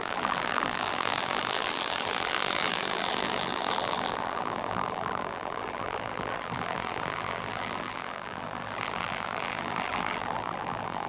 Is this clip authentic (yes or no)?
no